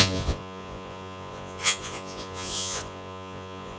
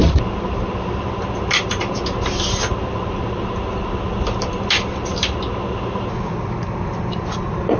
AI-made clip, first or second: first